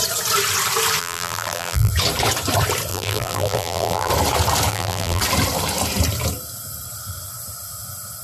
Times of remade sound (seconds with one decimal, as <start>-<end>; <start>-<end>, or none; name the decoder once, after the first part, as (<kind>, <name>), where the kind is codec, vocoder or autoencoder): 1.0-1.9 (vocoder, BigVGAN v2); 2.9-4.1; 4.7-5.2